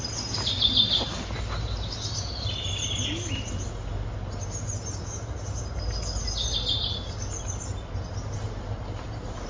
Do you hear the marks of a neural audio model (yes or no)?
no